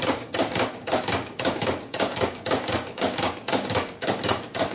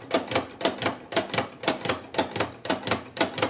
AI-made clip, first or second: first